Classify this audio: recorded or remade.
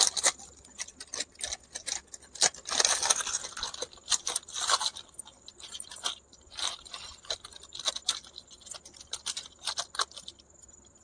recorded